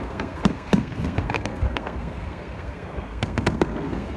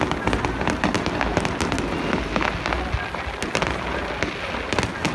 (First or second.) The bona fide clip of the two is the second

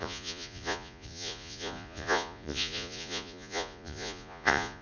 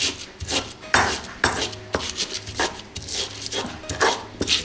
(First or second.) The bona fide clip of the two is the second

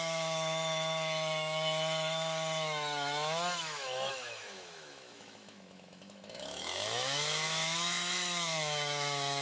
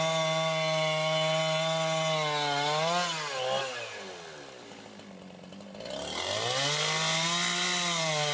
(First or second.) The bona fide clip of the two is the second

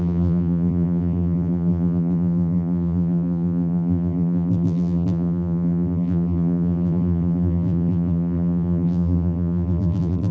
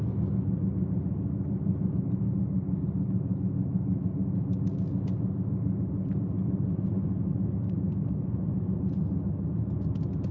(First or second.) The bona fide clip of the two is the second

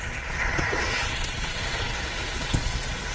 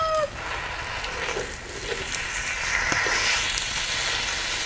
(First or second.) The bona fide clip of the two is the second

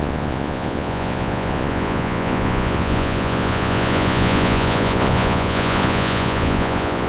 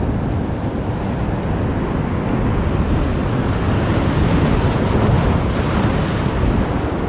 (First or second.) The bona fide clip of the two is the second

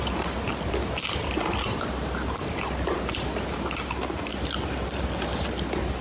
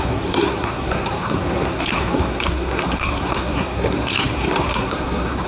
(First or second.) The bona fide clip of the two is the first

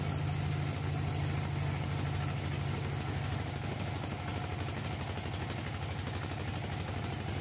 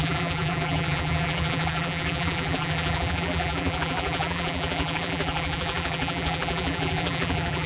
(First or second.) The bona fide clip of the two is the first